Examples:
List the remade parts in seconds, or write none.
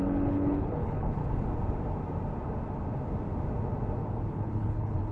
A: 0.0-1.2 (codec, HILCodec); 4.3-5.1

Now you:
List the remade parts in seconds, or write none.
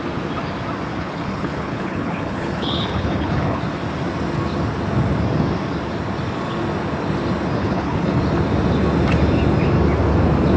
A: 0.9-3.6 (codec, HILCodec); 7.6-8.2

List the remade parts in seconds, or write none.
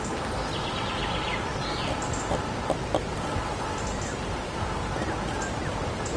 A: none